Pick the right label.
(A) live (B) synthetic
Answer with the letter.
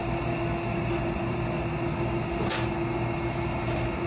A